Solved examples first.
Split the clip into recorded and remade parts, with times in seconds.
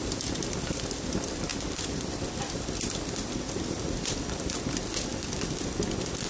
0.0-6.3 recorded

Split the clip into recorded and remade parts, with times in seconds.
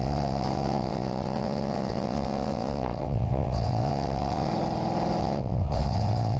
0.0-4.5 remade; 4.5-5.2 recorded; 5.2-6.4 remade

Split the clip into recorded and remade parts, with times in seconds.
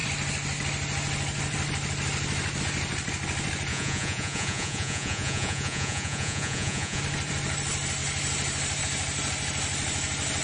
0.0-3.7 recorded; 3.7-7.0 remade; 7.0-10.4 recorded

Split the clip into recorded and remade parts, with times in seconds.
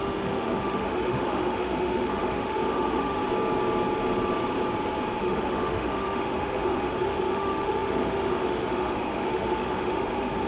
0.0-3.2 remade; 3.2-5.2 recorded; 5.2-10.5 remade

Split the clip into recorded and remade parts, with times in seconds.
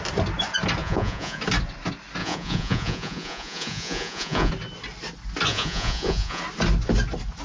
0.0-0.8 recorded; 0.8-1.4 remade; 1.4-2.2 recorded; 2.2-4.5 remade; 4.5-5.5 recorded; 5.5-6.4 remade; 6.4-7.4 recorded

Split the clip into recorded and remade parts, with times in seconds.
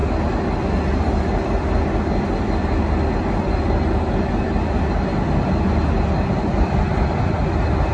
0.0-7.9 recorded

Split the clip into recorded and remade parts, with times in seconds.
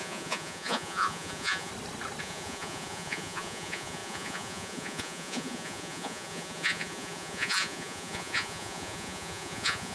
0.0-1.7 remade; 1.7-2.2 recorded; 2.2-9.9 remade